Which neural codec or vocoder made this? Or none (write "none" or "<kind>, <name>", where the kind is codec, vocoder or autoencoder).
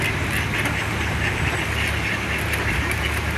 none